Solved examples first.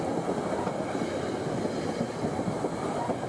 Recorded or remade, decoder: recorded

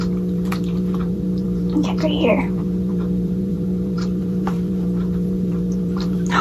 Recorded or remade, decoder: remade, vocoder, BigVGAN v2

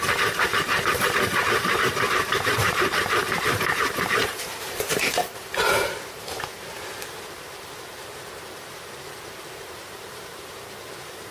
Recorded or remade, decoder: remade, vocoder, BigVGAN v2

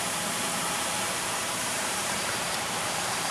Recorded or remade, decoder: remade, vocoder, BigVGAN v2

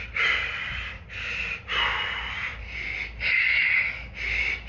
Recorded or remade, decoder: recorded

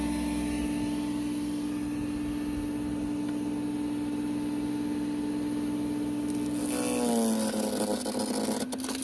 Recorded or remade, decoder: recorded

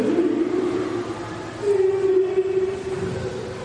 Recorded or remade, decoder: recorded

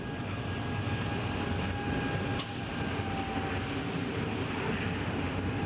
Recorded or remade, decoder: recorded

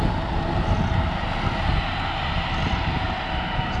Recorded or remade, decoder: recorded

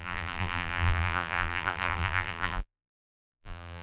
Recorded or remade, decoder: remade, vocoder, BigVGAN v2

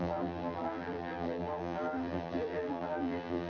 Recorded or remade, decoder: remade, vocoder, BigVGAN v2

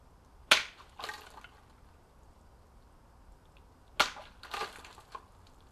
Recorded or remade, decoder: recorded